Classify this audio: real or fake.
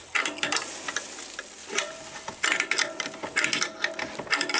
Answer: real